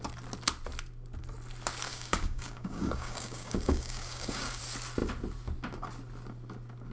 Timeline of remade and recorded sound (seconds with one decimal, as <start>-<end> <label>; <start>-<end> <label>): 0.0-1.9 recorded; 1.9-4.6 remade; 4.6-6.9 recorded